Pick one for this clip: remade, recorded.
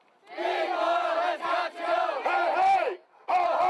recorded